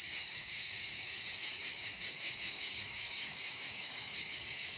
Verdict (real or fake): fake